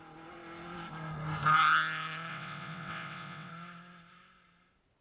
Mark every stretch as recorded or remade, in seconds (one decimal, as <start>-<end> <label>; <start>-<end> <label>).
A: 0.0-2.3 recorded; 2.3-3.5 remade; 3.5-5.0 recorded